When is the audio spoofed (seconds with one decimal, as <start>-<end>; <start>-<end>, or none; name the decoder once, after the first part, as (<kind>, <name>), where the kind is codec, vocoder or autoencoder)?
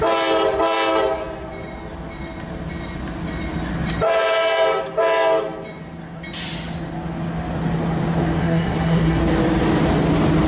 8.4-9.2 (codec, SNAC)